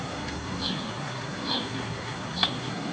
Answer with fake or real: fake